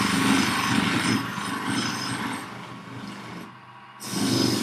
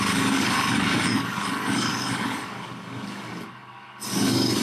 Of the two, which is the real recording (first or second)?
first